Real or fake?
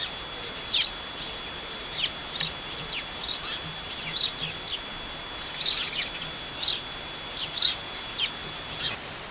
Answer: real